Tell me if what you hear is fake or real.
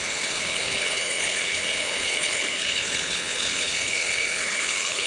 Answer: fake